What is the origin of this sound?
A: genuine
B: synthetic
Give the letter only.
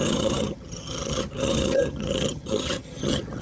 B